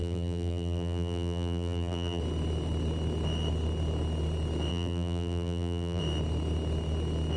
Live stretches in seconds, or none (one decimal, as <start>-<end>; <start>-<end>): 2.2-4.7; 6.0-7.4